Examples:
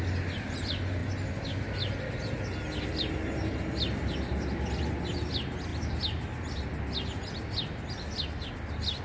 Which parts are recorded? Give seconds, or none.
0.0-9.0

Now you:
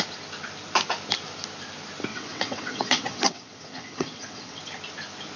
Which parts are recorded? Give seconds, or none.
0.0-2.1; 4.6-5.4

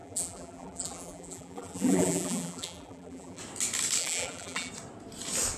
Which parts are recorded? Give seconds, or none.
3.4-4.0; 4.7-5.6

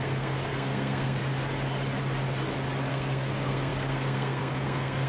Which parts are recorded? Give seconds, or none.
1.2-2.9